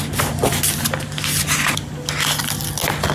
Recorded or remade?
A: recorded